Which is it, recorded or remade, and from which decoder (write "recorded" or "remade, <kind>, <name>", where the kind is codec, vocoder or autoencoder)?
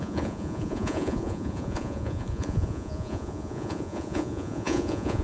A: remade, vocoder, Vocos